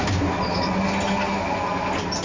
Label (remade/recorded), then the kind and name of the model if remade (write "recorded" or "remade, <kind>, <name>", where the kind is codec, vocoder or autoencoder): recorded